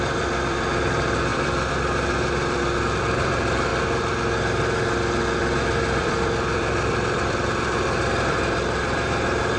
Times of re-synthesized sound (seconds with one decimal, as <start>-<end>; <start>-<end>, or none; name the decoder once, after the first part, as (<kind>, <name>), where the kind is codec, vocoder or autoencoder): 0.0-3.7 (vocoder, BigVGAN v2); 6.0-9.6